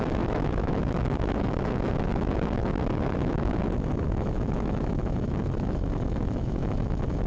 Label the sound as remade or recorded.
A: remade